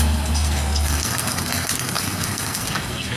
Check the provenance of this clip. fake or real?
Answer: fake